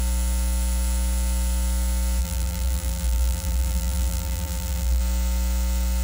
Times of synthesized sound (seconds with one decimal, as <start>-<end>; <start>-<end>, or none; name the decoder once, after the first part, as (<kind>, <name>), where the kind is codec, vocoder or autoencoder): 2.2-5.0 (vocoder, BigVGAN v2)